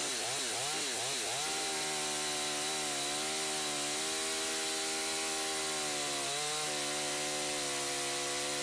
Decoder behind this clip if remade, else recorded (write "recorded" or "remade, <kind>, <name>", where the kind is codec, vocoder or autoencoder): recorded